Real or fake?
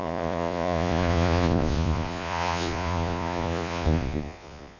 fake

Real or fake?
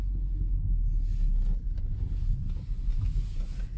real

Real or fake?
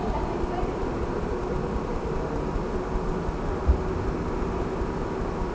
real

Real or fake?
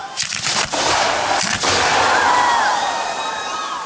fake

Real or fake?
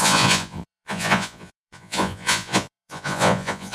fake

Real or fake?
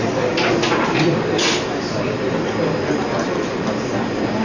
real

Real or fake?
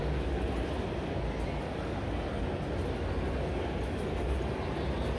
real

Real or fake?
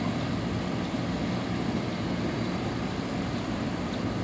real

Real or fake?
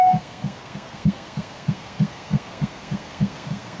fake